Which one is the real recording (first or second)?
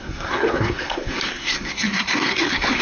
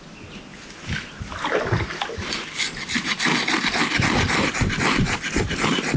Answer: second